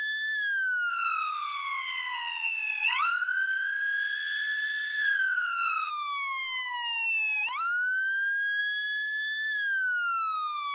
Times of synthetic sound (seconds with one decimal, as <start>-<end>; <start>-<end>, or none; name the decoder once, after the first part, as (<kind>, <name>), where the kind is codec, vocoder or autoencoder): 0.9-5.9 (vocoder, WaveNeXt)